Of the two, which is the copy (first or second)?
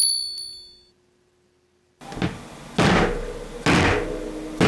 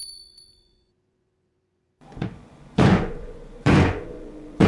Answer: second